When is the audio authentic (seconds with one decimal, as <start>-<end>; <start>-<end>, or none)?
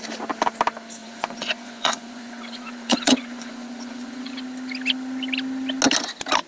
0.0-1.0; 4.4-6.5